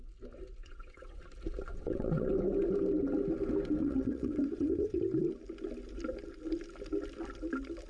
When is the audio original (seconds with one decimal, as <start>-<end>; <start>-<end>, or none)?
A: 0.0-0.6; 1.2-1.7; 2.3-3.8; 5.0-7.9